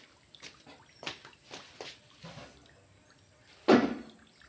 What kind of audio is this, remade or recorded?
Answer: recorded